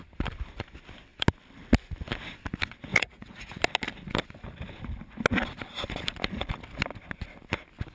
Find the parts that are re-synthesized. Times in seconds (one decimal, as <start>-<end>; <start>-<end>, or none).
2.9-3.6